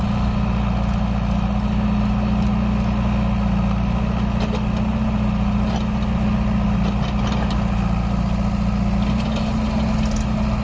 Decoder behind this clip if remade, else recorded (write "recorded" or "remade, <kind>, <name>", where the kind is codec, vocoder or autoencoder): recorded